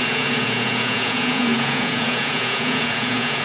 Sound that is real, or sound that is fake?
fake